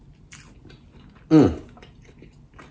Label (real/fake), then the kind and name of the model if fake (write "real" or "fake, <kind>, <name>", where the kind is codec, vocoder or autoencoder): real